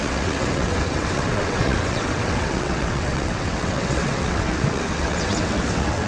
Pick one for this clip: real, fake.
fake